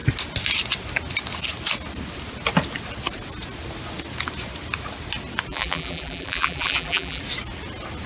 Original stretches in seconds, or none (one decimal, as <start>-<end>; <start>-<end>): 0.0-5.5; 7.2-8.1